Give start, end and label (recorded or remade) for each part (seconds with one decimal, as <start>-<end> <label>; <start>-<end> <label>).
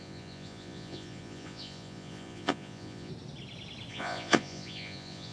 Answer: 0.0-3.1 remade; 3.1-3.9 recorded; 3.9-5.3 remade